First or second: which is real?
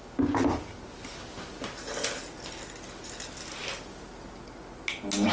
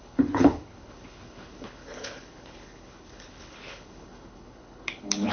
first